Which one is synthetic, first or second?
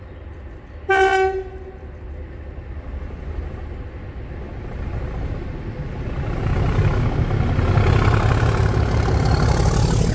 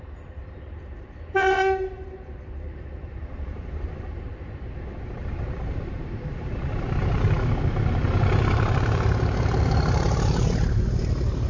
second